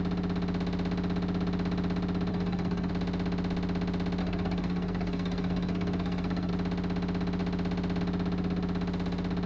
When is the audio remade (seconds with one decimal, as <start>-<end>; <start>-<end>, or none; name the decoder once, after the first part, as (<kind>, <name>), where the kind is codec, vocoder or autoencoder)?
2.3-2.9 (codec, SNAC); 4.2-6.5